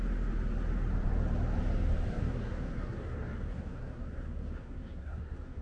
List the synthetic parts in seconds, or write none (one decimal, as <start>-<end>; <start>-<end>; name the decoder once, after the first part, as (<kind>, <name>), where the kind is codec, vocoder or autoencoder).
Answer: 2.1-5.6 (codec, SNAC)